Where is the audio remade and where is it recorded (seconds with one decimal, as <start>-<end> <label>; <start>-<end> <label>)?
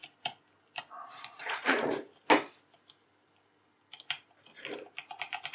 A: 0.0-0.8 recorded; 0.8-2.1 remade; 2.1-5.5 recorded